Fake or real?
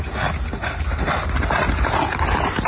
real